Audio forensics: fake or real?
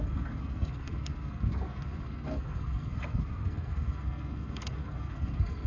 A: fake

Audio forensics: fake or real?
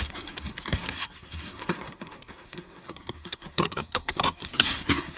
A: fake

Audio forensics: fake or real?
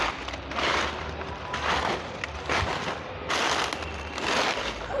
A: real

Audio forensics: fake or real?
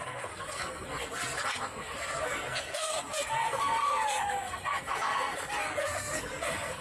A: fake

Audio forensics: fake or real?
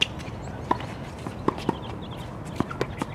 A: real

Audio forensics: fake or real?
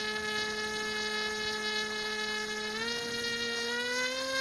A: real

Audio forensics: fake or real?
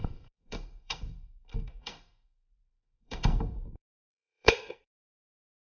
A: fake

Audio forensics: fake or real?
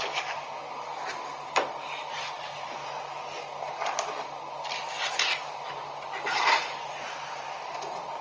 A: real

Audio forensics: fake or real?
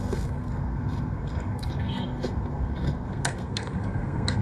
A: fake